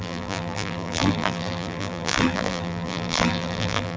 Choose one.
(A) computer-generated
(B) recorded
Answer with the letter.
A